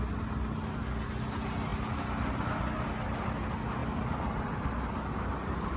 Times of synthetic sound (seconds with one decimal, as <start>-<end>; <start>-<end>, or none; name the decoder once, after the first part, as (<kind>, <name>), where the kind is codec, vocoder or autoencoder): none